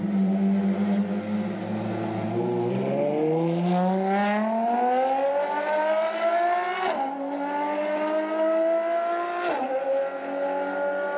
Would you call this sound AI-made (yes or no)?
no